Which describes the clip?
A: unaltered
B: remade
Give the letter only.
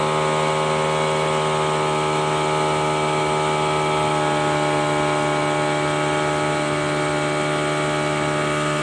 A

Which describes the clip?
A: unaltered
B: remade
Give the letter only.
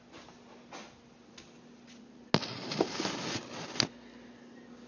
A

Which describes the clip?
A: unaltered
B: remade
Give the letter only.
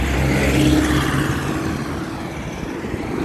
A